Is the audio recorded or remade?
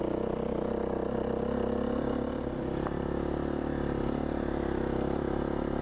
recorded